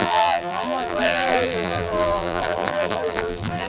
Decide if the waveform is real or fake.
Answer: fake